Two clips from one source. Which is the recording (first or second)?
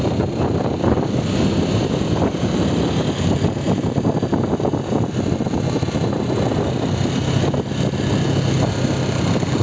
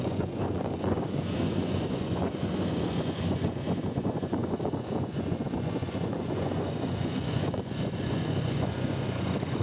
first